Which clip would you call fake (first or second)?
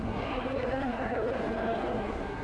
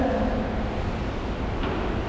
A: first